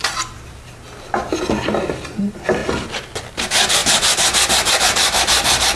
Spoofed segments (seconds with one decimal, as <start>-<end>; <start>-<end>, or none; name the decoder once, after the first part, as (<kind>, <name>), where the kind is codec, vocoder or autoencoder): none